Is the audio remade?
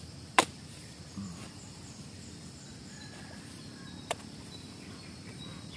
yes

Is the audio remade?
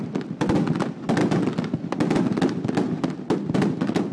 no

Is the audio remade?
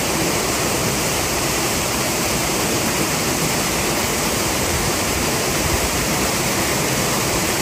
yes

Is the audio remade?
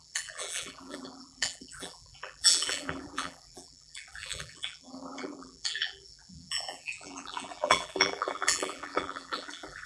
yes